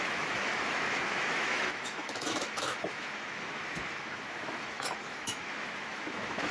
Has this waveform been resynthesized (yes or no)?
yes